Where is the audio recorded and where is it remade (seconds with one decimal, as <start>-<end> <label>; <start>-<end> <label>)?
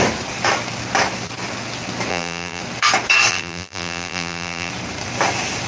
0.0-2.1 recorded; 2.1-2.6 remade; 2.6-3.3 recorded; 3.3-4.7 remade; 4.7-5.7 recorded